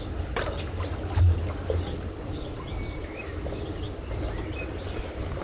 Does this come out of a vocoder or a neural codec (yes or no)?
no